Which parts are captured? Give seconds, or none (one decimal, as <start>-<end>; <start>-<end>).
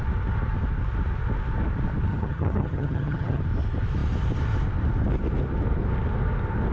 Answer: 0.0-2.1; 3.4-6.7